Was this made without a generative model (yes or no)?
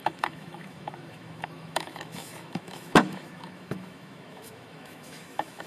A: no